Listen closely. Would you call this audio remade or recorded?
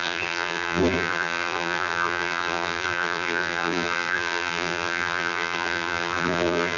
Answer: remade